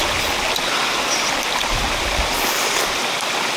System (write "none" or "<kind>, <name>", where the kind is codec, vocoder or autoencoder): none